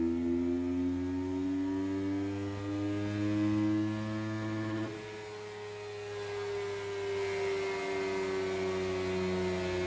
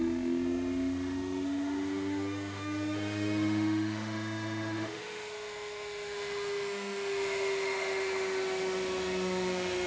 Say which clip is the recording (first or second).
first